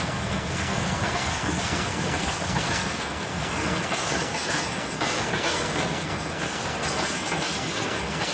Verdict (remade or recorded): remade